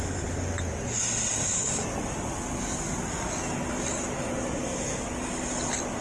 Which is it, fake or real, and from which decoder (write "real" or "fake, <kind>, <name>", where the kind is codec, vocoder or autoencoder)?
real